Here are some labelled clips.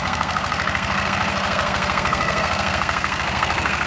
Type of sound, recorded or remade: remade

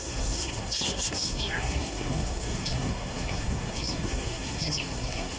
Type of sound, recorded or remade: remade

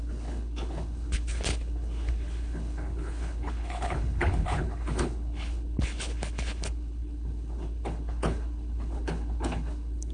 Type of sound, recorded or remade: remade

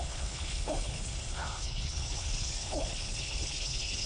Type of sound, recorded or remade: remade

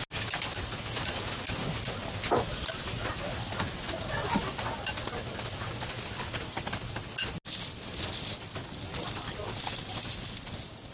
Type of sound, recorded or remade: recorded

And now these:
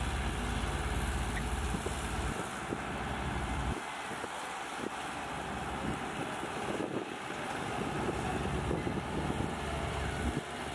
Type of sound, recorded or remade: recorded